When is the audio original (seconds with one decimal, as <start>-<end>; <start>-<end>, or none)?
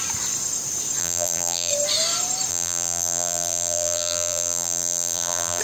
0.0-1.0; 1.7-2.5